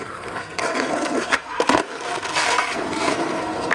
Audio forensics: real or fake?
fake